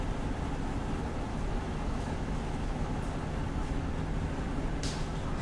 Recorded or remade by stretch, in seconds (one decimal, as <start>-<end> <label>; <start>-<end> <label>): 0.0-1.3 recorded; 1.3-3.0 remade; 3.0-5.4 recorded